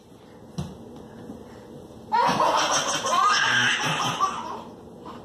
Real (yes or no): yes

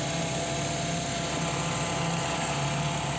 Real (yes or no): yes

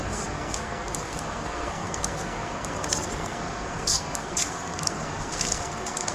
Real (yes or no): no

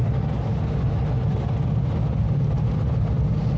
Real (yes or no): yes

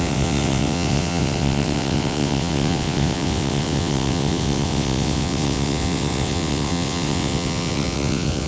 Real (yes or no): no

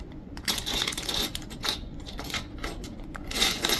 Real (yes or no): no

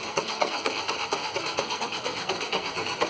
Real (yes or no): no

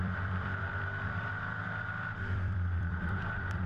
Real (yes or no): no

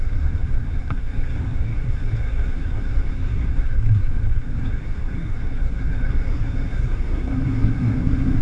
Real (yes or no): no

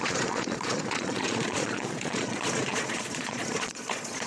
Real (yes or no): no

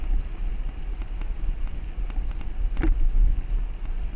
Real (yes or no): yes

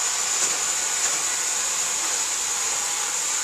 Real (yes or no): yes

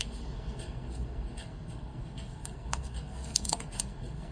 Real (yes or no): no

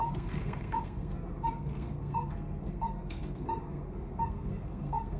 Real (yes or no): no